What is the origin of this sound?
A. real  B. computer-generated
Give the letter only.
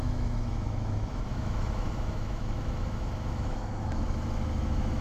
B